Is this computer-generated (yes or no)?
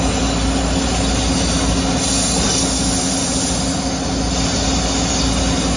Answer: no